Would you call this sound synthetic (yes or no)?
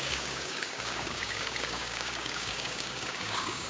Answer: yes